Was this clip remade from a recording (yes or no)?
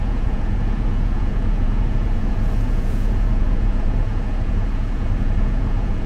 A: yes